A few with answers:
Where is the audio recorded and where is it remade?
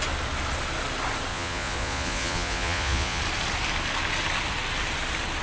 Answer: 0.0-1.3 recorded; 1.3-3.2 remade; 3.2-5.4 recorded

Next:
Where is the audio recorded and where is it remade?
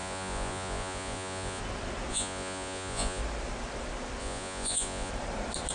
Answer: 0.0-1.6 remade; 1.6-2.1 recorded; 2.1-3.2 remade; 3.2-4.2 recorded; 4.2-5.1 remade; 5.1-5.7 recorded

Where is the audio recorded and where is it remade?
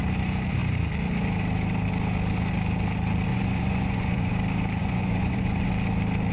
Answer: 0.0-3.3 recorded; 3.3-4.3 remade; 4.3-4.8 recorded; 4.8-5.7 remade; 5.7-6.3 recorded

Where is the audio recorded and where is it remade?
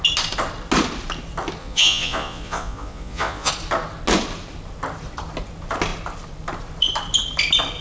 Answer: 0.0-1.6 recorded; 1.6-3.5 remade; 3.5-7.8 recorded